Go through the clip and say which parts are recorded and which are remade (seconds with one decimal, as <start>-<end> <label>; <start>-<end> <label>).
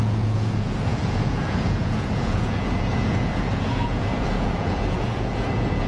0.0-5.9 remade